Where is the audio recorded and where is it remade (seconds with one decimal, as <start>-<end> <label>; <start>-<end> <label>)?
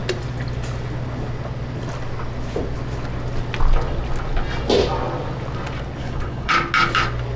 0.0-6.0 recorded; 6.0-6.5 remade; 6.5-7.4 recorded